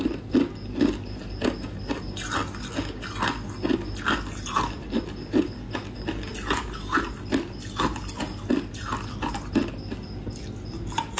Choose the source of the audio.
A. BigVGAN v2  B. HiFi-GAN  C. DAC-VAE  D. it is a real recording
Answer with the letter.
D